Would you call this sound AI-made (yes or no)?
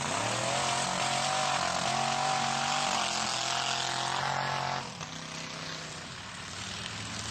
no